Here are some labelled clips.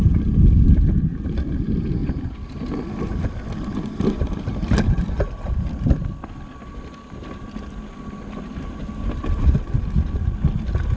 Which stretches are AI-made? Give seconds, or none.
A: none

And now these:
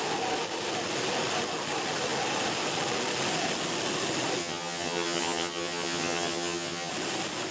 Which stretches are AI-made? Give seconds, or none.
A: 4.4-6.9

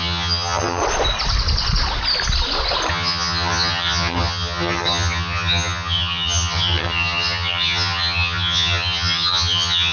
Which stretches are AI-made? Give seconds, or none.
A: 0.0-0.8; 2.9-9.9

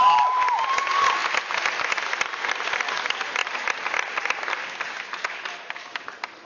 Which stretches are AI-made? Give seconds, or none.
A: none

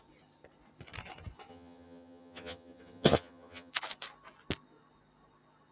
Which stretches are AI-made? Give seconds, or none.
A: 1.5-3.7